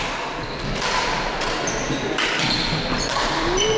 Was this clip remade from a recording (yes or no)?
no